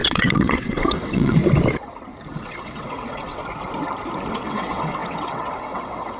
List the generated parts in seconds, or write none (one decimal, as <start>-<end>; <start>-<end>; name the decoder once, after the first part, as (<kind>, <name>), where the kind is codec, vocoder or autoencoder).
0.0-1.4 (vocoder, WaveNeXt); 2.3-3.4; 4.3-6.2